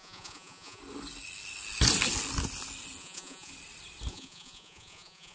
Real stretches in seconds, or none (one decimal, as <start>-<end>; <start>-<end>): 0.8-3.0; 3.5-4.1